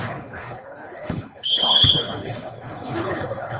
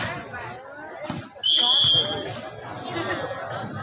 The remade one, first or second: first